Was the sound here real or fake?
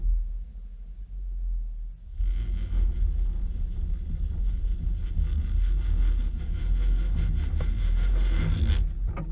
real